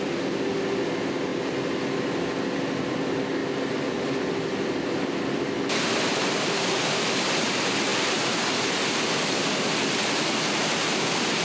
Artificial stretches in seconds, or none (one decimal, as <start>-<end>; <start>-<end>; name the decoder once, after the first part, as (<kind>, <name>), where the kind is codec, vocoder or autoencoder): 1.3-2.0 (vocoder, BigVGAN v2); 3.4-7.5